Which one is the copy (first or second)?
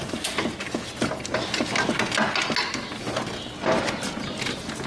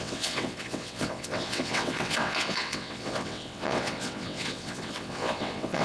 second